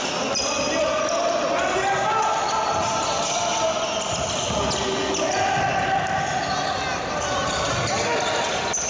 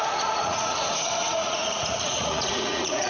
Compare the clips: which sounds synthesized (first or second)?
second